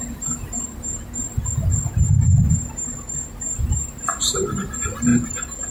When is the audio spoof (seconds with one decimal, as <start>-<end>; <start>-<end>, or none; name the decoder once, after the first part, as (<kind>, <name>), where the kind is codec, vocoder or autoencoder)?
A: 5.1-5.7 (vocoder, BigVGAN v2)